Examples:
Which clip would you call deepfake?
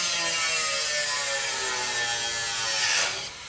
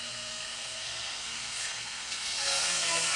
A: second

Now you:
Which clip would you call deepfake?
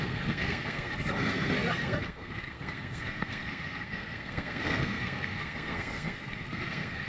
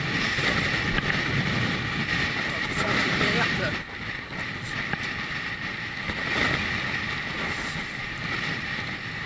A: first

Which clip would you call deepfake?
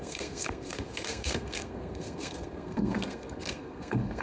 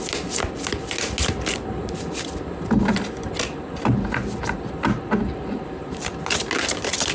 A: first